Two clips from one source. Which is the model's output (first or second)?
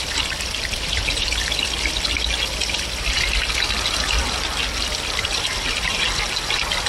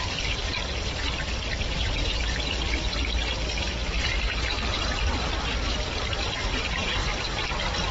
second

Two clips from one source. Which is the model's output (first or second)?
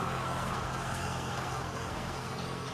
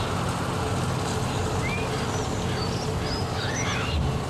first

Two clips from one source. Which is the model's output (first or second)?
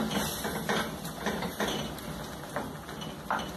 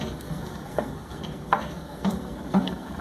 second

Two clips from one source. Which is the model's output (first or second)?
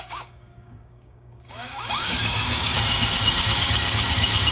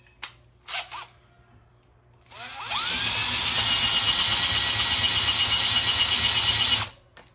first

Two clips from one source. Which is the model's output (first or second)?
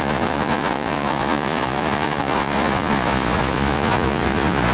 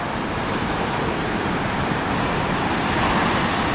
first